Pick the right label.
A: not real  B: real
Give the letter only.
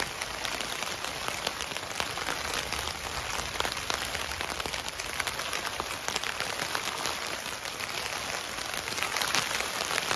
B